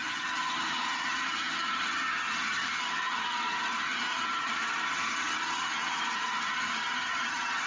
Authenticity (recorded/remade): remade